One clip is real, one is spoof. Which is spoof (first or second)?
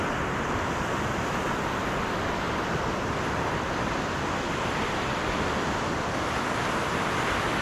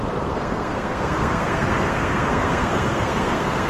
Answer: second